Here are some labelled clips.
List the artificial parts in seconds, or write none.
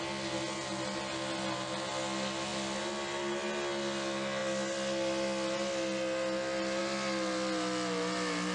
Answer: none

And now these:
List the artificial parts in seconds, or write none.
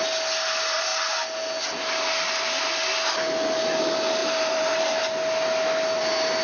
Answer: 4.2-5.0 (vocoder, BigVGAN v2)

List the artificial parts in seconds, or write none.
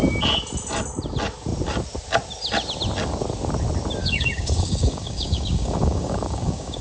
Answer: 4.0-6.8 (codec, DAC)